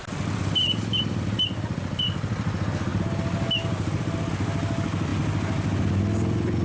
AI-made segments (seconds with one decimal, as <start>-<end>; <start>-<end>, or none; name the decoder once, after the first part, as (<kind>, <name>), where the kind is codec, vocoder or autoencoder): none